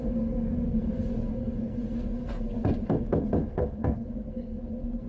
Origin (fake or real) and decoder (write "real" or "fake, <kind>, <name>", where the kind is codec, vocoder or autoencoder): fake, codec, SNAC